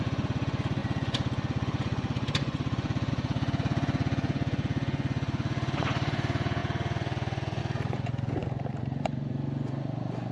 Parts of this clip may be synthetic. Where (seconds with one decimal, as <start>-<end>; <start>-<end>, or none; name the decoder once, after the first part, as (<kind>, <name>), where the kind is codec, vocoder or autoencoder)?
0.0-10.3 (vocoder, Vocos)